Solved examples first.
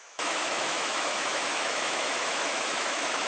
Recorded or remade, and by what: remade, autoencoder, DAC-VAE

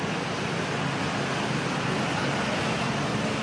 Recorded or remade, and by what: recorded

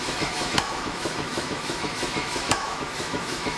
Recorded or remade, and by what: remade, autoencoder, DAC-VAE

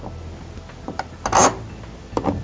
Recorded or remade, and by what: recorded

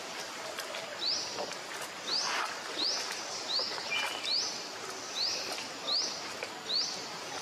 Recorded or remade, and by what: recorded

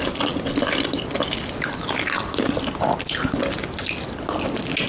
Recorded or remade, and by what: recorded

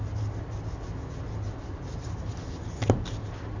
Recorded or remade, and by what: recorded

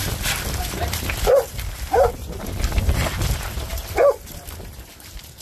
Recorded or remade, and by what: recorded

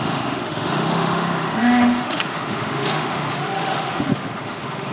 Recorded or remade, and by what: remade, autoencoder, DAC-VAE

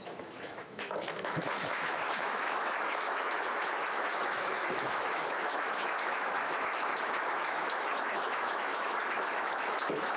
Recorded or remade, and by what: remade, autoencoder, DAC-VAE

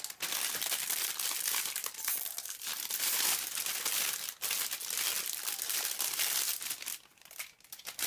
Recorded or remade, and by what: recorded